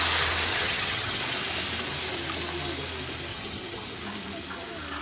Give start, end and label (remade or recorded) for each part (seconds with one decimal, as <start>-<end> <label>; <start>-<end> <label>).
0.0-0.5 recorded; 0.5-1.2 remade; 1.2-3.3 recorded; 3.3-3.9 remade; 3.9-5.0 recorded